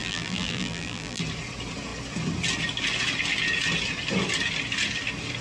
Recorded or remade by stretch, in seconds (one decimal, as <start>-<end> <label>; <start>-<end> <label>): 0.0-1.2 remade; 1.2-5.4 recorded